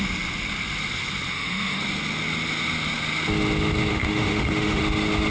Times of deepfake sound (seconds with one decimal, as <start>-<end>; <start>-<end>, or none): 1.3-1.8; 3.9-4.8